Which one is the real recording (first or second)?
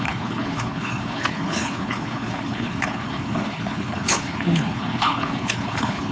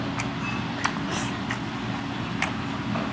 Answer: second